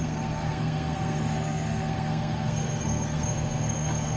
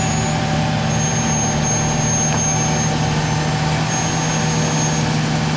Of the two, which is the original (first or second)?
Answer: second